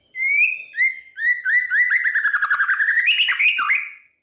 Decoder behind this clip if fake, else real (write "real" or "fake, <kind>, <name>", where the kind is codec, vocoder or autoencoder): real